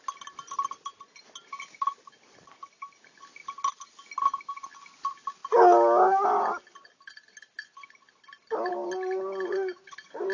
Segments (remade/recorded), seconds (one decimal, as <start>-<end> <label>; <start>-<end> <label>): 0.0-7.7 recorded; 7.7-8.7 remade; 8.7-10.3 recorded

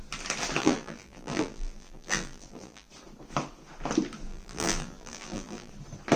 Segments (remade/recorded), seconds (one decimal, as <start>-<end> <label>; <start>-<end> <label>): 0.0-0.6 recorded; 0.6-2.9 remade; 2.9-4.3 recorded; 4.3-5.7 remade; 5.7-6.2 recorded

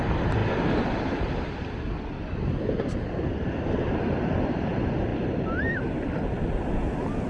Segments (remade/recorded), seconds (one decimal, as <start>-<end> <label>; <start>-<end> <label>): 0.0-5.1 recorded; 5.1-5.7 remade; 5.7-7.3 recorded

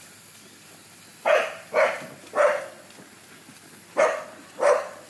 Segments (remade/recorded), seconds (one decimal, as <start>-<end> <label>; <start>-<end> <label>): 0.0-5.1 recorded

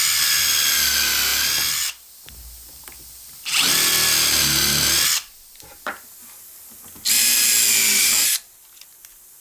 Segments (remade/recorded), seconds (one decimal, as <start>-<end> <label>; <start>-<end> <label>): 0.0-7.9 recorded; 7.9-8.5 remade; 8.5-9.4 recorded

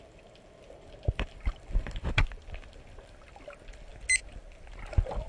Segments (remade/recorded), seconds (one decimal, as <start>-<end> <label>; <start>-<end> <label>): 0.0-3.9 remade; 3.9-5.3 recorded

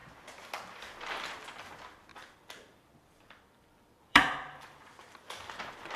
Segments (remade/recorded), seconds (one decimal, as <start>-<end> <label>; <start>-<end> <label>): 0.0-2.1 recorded; 2.1-5.6 remade; 5.6-6.0 recorded

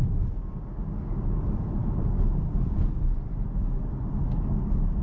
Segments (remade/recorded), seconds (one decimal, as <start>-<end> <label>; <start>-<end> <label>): 0.0-5.0 recorded